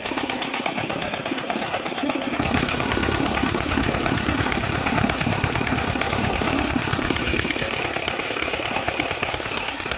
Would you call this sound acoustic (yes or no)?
no